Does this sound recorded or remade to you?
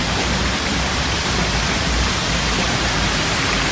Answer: remade